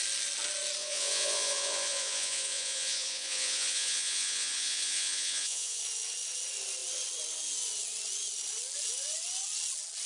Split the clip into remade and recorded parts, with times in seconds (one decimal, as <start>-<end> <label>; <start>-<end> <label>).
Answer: 0.0-0.8 recorded; 0.8-5.8 remade; 5.8-10.1 recorded

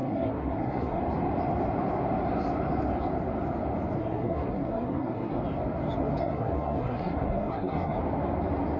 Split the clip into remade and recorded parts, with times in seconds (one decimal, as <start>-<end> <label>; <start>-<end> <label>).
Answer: 0.0-1.0 remade; 1.0-4.0 recorded; 4.0-5.4 remade; 5.4-6.2 recorded; 6.2-8.0 remade; 8.0-8.8 recorded

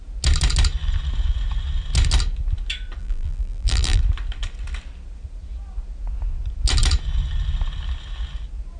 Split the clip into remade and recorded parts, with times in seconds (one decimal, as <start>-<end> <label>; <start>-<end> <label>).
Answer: 0.0-3.0 recorded; 3.0-4.0 remade; 4.0-8.8 recorded

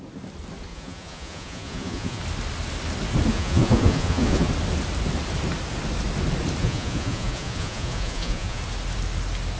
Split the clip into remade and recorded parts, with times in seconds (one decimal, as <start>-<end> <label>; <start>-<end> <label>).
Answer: 0.0-0.7 recorded; 0.7-2.2 remade; 2.2-3.3 recorded; 3.3-4.5 remade; 4.5-6.6 recorded; 6.6-8.6 remade; 8.6-9.6 recorded

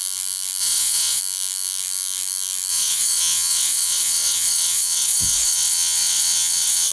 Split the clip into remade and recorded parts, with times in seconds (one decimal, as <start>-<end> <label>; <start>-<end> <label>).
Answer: 0.0-0.6 recorded; 0.6-1.2 remade; 1.2-2.7 recorded; 2.7-6.9 remade

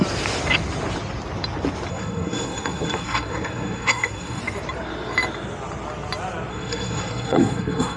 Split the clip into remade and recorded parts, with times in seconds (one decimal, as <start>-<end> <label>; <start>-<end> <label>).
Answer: 0.0-1.9 recorded; 1.9-4.4 remade; 4.4-6.5 recorded; 6.5-8.0 remade

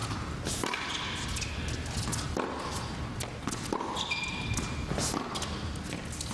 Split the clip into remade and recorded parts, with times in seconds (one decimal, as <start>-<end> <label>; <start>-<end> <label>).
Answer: 0.0-6.3 recorded

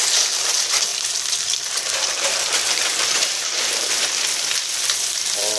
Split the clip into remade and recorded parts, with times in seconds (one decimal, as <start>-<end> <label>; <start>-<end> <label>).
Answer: 0.0-0.9 recorded; 0.9-4.0 remade; 4.0-5.6 recorded